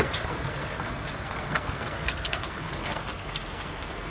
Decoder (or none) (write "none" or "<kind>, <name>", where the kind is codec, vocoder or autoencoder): codec, SNAC